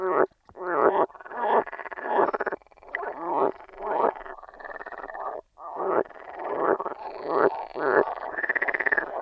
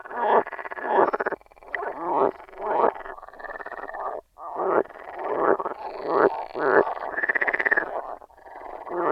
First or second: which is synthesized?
first